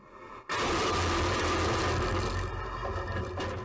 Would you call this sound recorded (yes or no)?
yes